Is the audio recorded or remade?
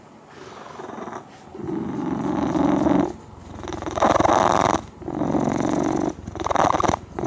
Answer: recorded